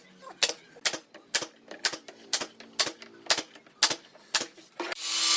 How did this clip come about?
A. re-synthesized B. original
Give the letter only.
B